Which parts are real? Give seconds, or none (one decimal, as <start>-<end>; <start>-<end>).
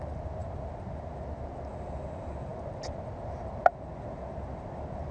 0.0-5.1